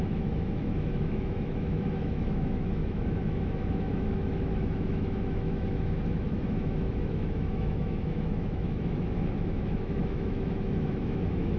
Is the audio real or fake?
fake